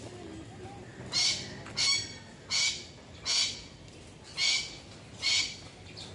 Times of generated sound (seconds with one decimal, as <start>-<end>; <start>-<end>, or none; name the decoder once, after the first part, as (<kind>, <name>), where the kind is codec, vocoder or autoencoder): none